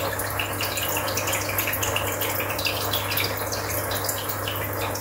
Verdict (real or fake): real